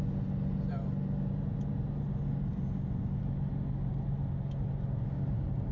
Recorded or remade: recorded